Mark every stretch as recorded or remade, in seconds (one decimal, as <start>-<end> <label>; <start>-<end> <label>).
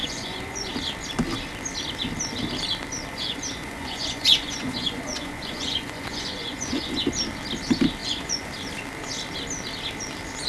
0.0-0.7 remade; 0.7-3.1 recorded; 3.1-7.1 remade; 7.1-8.0 recorded; 8.0-8.5 remade; 8.5-10.5 recorded